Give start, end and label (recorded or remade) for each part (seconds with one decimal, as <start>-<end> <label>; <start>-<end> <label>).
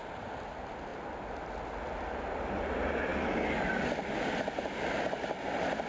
0.0-5.9 recorded